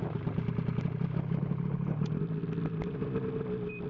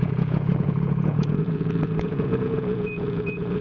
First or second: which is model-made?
second